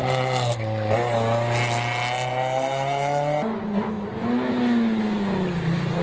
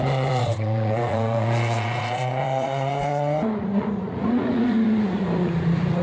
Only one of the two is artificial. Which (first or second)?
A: second